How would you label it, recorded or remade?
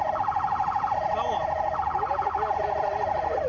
recorded